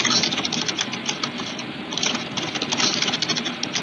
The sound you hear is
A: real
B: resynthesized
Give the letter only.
A